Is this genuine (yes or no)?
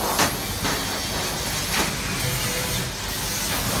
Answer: yes